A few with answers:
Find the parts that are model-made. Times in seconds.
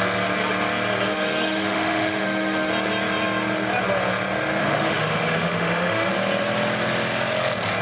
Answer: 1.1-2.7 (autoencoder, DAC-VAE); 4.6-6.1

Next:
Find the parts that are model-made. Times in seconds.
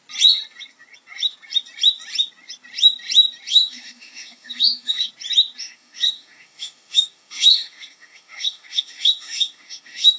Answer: 3.5-5.1 (autoencoder, DAC-VAE); 5.6-10.2